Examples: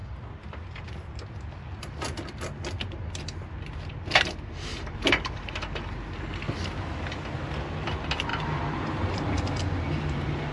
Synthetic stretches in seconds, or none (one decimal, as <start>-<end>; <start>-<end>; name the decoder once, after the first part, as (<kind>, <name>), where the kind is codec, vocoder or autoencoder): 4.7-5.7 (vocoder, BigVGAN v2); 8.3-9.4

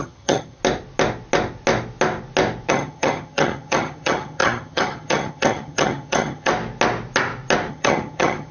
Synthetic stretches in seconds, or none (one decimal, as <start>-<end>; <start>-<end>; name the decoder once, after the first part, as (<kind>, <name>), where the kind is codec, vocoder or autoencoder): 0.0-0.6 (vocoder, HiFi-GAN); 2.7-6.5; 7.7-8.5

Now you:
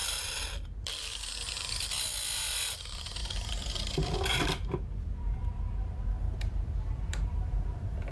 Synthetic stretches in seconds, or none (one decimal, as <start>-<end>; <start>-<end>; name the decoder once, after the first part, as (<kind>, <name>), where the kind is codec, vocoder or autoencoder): 0.0-5.4 (vocoder, BigVGAN v2); 6.1-8.1

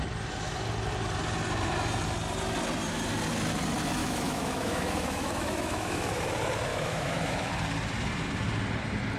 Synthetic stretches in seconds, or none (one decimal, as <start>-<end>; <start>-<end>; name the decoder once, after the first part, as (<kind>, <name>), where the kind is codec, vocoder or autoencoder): 4.0-6.2 (autoencoder, DAC-VAE); 6.7-7.5

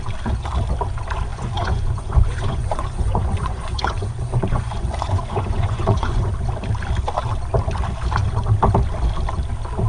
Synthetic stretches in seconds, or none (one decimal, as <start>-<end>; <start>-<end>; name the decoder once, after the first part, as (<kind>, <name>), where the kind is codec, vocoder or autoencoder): 1.3-6.3 (vocoder, Vocos)